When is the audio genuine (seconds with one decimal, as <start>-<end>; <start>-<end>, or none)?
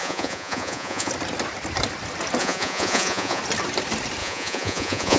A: 1.1-2.4; 3.4-4.2